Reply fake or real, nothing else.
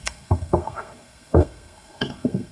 fake